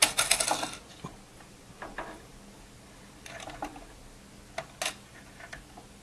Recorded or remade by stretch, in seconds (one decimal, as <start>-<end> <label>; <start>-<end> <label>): 0.0-6.0 recorded